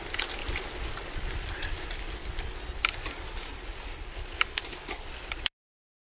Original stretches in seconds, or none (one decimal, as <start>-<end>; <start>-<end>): 0.0-0.4; 0.9-6.2